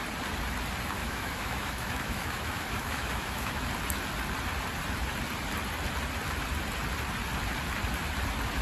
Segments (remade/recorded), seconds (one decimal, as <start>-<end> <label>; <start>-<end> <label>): 0.0-1.0 recorded; 1.0-3.7 remade; 3.7-8.6 recorded